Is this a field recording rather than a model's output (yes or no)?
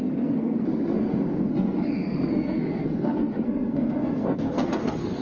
no